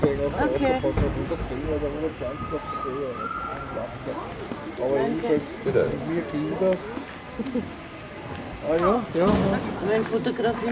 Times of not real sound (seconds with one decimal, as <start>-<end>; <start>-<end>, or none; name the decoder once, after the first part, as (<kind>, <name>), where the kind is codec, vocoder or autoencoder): none